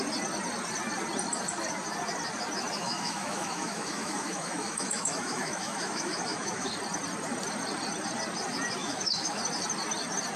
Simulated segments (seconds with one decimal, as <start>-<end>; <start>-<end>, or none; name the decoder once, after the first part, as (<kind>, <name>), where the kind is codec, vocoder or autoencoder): 2.8-6.7 (autoencoder, DAC-VAE); 8.8-9.4